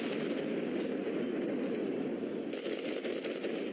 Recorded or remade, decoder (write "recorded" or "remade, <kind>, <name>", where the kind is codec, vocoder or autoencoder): recorded